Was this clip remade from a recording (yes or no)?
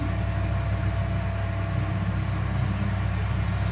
no